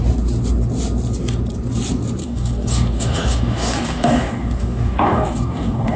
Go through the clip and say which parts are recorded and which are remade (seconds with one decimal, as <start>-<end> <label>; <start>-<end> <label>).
0.0-2.2 recorded; 2.2-6.0 remade